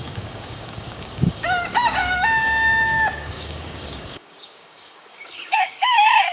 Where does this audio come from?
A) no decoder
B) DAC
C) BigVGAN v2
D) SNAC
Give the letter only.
B